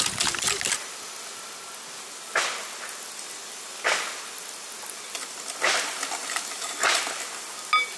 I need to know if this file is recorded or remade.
recorded